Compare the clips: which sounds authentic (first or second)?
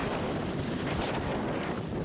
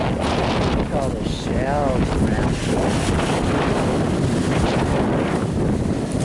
second